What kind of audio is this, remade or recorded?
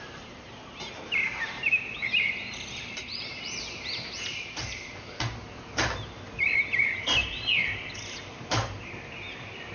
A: remade